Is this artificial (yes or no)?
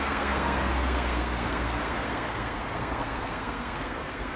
yes